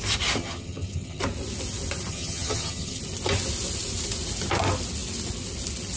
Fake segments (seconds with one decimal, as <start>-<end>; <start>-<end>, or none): 0.4-1.2; 2.1-3.0